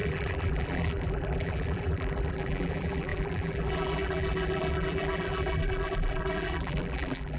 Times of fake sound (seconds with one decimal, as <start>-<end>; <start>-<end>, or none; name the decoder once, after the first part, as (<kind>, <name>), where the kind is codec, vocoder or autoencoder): 0.0-7.4 (vocoder, BigVGAN v2)